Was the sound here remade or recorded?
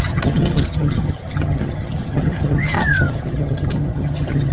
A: remade